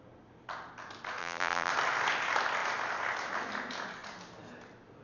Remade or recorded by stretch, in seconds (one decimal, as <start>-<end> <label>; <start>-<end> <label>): 0.0-1.2 recorded; 1.2-1.7 remade; 1.7-5.0 recorded